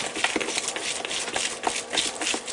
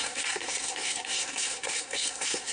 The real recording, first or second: first